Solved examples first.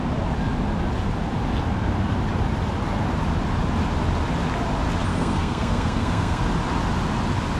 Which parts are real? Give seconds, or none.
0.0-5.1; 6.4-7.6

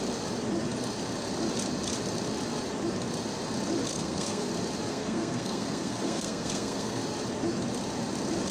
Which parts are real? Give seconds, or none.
0.0-3.9; 4.5-4.9; 7.0-8.5

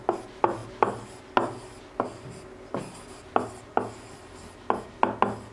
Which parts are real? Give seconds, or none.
0.0-5.5

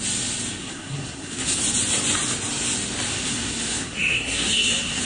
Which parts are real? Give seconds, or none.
0.0-0.6; 1.6-3.1

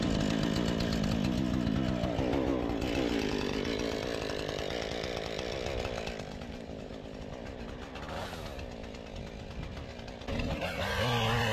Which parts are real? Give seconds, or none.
0.0-11.5

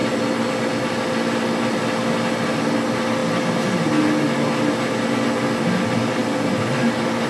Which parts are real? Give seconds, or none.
0.0-7.3